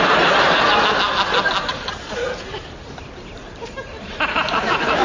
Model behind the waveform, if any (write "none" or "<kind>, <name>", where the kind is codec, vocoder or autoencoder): none